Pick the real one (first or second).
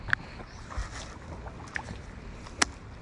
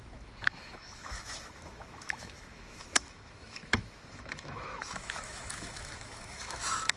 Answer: first